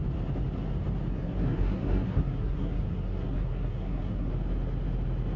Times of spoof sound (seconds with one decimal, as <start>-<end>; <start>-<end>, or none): 1.1-4.3